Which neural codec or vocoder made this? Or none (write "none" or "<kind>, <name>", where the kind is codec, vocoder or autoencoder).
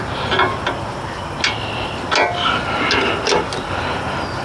none